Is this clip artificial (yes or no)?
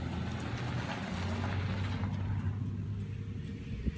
no